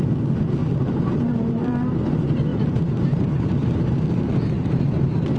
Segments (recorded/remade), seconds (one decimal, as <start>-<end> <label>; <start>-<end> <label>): 0.0-0.6 recorded; 0.6-1.7 remade; 1.7-2.5 recorded; 2.5-4.8 remade; 4.8-5.4 recorded